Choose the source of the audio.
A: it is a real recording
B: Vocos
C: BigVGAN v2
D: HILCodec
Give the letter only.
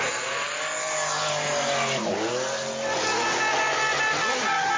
A